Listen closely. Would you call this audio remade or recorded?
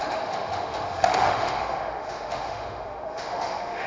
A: remade